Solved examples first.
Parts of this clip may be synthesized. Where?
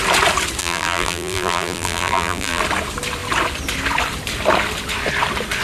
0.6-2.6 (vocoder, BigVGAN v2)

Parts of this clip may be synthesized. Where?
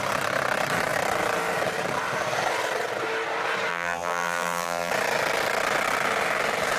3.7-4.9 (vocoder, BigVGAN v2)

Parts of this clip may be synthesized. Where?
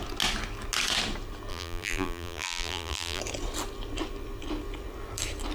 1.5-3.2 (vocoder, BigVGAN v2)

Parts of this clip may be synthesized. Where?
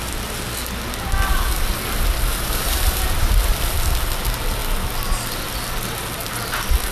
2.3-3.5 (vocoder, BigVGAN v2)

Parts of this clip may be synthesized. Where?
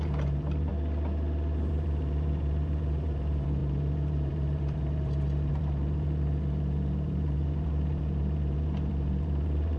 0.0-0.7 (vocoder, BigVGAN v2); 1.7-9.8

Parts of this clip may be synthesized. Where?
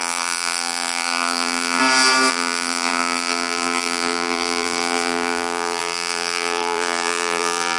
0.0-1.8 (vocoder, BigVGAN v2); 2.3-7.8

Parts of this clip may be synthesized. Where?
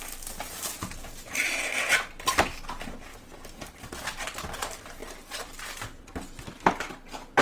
3.1-4.4 (vocoder, BigVGAN v2); 5.0-6.7